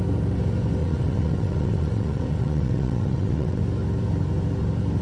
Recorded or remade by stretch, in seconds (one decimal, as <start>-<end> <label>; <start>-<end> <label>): 0.0-0.8 recorded; 0.8-3.6 remade; 3.6-5.0 recorded